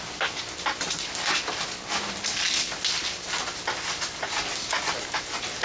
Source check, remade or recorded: recorded